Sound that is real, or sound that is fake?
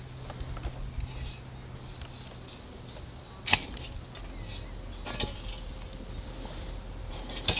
real